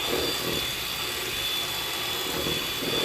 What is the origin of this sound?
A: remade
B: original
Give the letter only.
B